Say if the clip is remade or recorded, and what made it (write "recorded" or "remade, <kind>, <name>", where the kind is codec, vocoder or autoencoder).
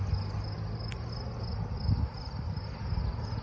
recorded